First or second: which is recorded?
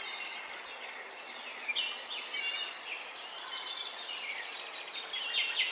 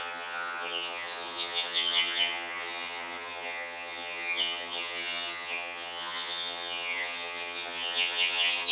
first